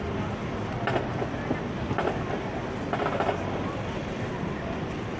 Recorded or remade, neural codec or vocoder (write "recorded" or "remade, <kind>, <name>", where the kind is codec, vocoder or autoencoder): recorded